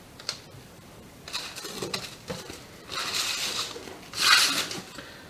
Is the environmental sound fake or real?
fake